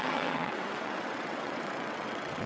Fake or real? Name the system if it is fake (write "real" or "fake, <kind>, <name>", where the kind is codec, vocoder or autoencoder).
fake, vocoder, WaveNeXt